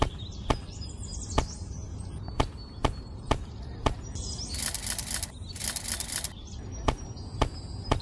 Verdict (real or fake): real